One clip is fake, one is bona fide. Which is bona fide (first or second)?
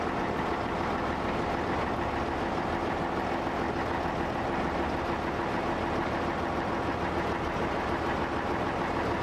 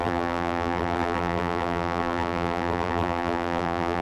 first